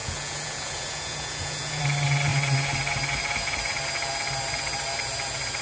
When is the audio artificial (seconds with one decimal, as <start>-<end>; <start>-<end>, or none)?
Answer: 0.0-1.8